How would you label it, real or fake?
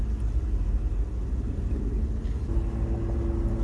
real